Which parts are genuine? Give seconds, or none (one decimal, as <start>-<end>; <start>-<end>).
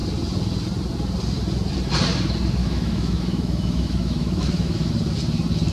0.0-2.6; 4.9-5.7